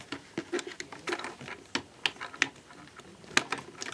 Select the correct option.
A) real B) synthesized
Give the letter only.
A